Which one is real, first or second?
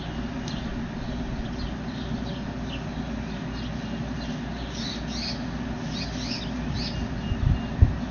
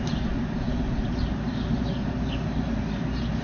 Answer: first